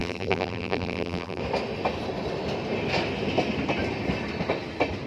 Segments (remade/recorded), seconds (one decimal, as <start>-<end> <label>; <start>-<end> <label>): 0.0-1.4 remade; 1.4-5.1 recorded